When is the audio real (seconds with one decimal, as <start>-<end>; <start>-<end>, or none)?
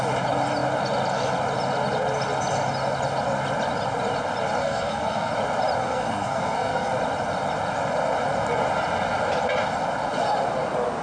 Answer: 0.0-4.6; 5.3-5.8; 6.9-11.0